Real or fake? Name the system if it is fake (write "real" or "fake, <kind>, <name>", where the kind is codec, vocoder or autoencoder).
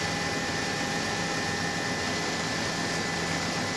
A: real